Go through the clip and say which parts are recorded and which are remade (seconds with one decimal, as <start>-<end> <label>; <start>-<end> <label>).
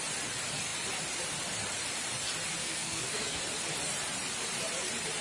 0.0-2.6 recorded; 2.6-3.4 remade; 3.4-5.2 recorded